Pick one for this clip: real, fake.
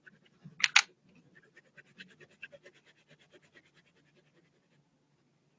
real